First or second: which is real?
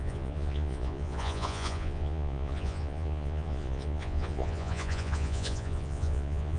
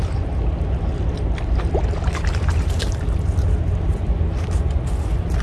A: second